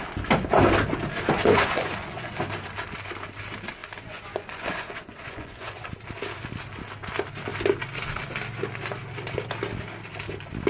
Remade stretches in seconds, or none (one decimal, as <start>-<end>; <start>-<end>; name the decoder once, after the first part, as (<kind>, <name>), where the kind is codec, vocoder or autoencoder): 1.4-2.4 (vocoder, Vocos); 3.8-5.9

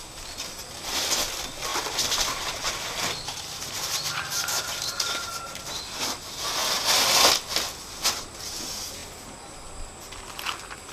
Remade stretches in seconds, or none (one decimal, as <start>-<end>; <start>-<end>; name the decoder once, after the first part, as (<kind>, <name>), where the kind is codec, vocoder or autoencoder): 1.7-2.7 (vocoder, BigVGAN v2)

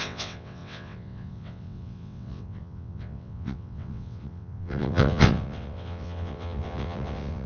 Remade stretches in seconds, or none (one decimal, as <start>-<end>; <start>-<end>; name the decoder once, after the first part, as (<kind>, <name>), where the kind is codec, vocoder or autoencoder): 0.0-7.5 (vocoder, WaveNeXt)

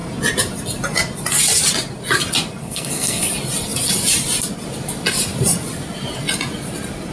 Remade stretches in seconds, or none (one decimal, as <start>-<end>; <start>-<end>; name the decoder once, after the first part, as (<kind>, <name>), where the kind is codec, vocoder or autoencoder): 2.6-3.3 (codec, SNAC)